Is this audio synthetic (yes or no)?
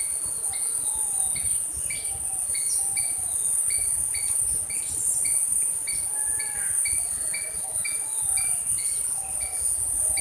no